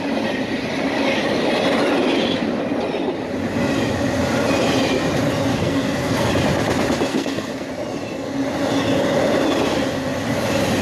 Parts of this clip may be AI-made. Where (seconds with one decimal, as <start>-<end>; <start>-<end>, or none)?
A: 5.5-6.3; 7.1-7.7